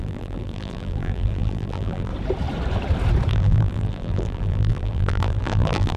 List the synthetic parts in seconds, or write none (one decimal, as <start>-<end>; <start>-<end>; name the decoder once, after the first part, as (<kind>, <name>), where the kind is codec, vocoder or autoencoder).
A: 0.0-2.1 (vocoder, BigVGAN v2); 3.3-6.0